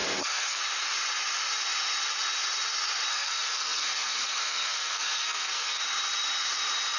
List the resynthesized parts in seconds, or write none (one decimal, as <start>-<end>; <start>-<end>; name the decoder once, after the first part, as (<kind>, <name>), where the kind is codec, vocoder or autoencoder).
0.0-0.6 (codec, SNAC); 3.1-5.8